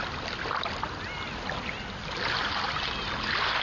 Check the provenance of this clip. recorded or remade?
recorded